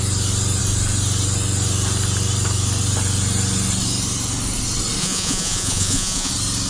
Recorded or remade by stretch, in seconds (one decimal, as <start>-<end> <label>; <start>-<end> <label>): 0.0-5.0 recorded; 5.0-6.3 remade; 6.3-6.7 recorded